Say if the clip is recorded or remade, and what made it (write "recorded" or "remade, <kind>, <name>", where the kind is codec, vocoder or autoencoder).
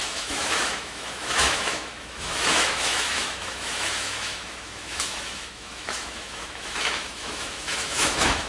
remade, autoencoder, DAC-VAE